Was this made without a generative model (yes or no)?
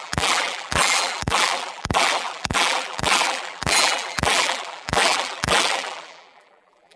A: no